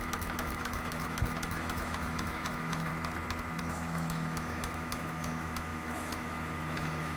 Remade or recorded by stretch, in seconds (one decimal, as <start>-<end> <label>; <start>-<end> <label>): 0.0-2.9 remade; 2.9-3.6 recorded; 3.6-7.2 remade